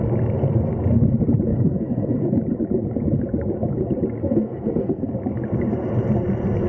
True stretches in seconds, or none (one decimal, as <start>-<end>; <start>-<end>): 0.0-1.5; 2.4-4.2; 5.1-6.7